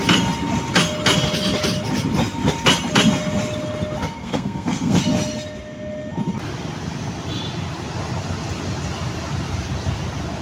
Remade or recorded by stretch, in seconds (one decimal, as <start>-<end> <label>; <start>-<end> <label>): 0.0-4.2 recorded; 4.2-5.0 remade; 5.0-10.4 recorded

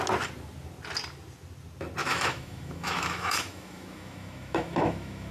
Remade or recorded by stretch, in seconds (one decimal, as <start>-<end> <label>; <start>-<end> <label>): 0.0-2.0 recorded; 2.0-5.3 remade

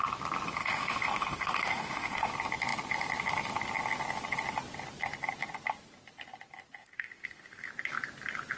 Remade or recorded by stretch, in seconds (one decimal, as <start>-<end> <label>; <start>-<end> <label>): 0.0-0.6 recorded; 0.6-2.3 remade; 2.3-6.8 recorded; 6.8-7.7 remade; 7.7-8.6 recorded